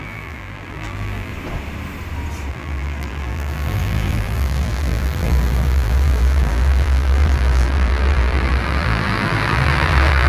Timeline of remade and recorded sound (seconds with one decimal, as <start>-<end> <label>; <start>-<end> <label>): 0.0-1.3 remade; 1.3-2.5 recorded; 2.5-10.3 remade